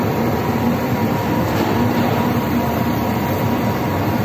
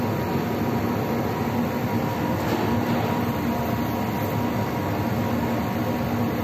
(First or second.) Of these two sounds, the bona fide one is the second